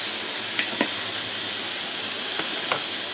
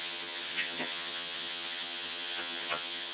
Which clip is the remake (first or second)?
second